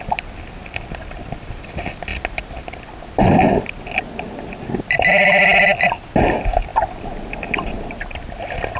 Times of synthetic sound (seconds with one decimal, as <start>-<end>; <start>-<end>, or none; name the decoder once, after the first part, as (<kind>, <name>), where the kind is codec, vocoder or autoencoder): 0.6-1.5 (vocoder, BigVGAN v2)